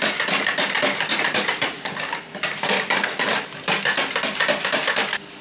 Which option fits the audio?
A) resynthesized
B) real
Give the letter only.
B